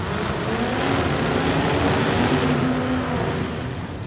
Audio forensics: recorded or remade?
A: recorded